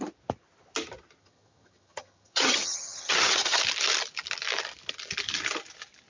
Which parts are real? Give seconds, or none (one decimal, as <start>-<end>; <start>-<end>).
0.0-1.2; 3.6-6.1